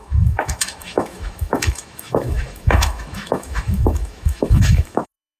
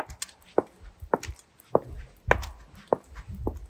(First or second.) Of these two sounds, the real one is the second